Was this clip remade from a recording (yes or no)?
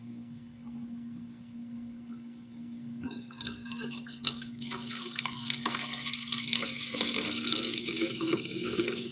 yes